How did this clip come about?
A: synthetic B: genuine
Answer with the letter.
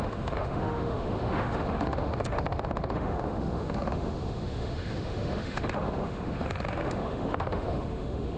A